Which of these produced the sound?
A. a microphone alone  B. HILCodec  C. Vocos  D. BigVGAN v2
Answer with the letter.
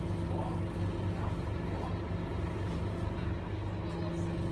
A